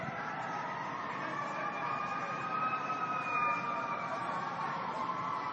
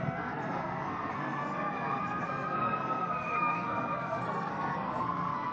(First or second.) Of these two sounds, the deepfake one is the second